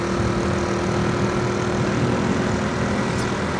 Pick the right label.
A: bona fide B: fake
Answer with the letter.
A